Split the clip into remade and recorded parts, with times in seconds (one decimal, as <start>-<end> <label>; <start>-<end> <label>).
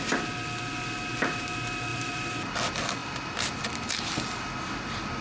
0.0-1.9 recorded; 1.9-2.4 remade; 2.4-3.0 recorded; 3.0-5.2 remade